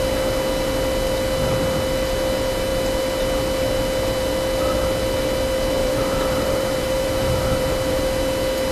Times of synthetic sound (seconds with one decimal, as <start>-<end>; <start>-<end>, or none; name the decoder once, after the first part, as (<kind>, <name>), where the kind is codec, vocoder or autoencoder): 5.8-8.2 (vocoder, BigVGAN v2)

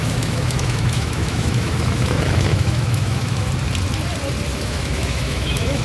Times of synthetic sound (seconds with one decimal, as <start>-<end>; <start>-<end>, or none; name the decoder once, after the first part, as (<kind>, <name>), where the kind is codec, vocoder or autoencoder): 0.0-3.5 (autoencoder, DAC-VAE); 4.5-5.8

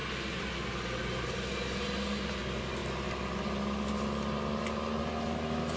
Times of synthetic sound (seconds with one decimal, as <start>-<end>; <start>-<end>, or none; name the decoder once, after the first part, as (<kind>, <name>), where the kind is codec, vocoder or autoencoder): none